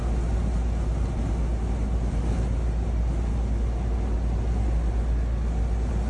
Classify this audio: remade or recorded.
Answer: recorded